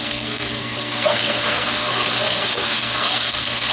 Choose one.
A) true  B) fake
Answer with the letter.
B